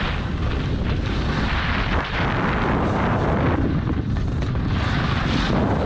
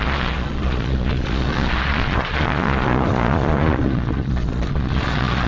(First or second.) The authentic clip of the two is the first